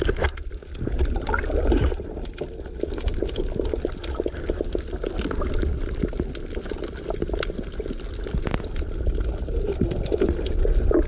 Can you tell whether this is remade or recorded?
recorded